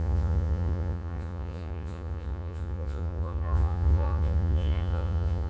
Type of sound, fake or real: fake